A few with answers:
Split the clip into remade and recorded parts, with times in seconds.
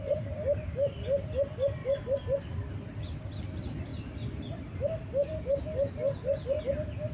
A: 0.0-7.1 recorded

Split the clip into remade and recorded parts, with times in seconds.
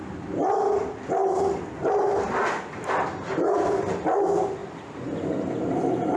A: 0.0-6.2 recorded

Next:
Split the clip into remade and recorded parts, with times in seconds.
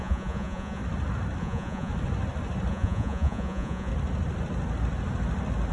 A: 0.0-0.8 remade; 0.8-1.4 recorded; 1.4-1.9 remade; 1.9-2.7 recorded; 2.7-3.9 remade; 3.9-5.7 recorded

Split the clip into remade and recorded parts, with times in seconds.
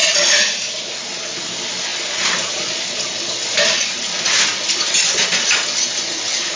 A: 0.0-6.6 recorded